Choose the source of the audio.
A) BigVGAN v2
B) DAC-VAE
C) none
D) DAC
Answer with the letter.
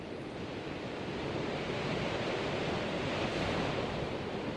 A